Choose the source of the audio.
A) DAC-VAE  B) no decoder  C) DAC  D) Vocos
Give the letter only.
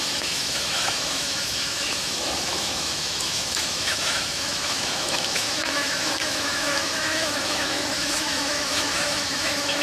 A